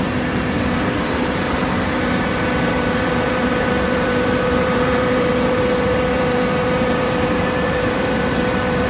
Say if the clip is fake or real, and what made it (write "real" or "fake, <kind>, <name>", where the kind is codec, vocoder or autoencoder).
fake, vocoder, BigVGAN v2